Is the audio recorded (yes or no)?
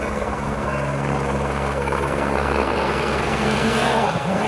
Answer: no